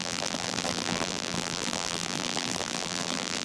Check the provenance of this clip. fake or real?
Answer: fake